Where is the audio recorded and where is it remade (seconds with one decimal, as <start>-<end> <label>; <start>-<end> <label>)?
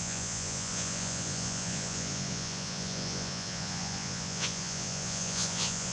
0.0-5.9 remade